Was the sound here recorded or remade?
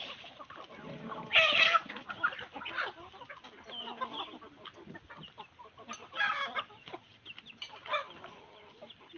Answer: recorded